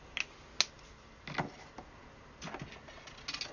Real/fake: real